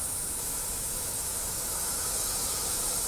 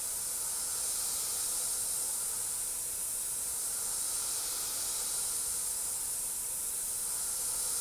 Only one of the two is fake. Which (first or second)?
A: first